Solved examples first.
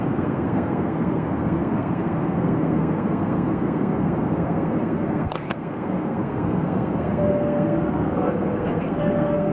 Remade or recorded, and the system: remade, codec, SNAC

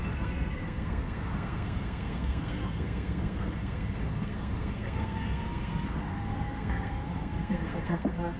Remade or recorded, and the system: remade, codec, SNAC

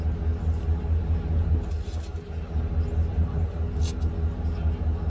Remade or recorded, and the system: recorded